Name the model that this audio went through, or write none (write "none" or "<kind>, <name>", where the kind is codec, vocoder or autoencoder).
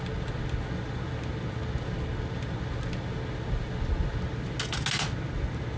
none